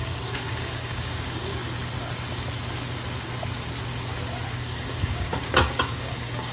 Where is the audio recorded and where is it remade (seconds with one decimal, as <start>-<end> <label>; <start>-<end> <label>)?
0.0-1.6 remade; 1.6-4.5 recorded; 4.5-6.5 remade